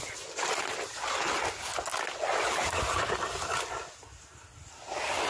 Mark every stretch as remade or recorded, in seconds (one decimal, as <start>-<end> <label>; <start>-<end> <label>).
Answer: 0.0-5.3 recorded